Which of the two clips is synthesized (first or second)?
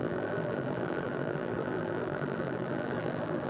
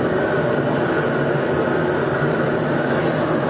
first